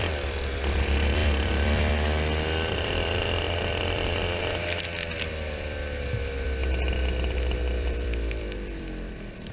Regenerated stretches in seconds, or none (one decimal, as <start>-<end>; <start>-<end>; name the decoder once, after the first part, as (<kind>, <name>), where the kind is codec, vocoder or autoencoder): 0.0-4.2 (vocoder, BigVGAN v2); 5.3-9.5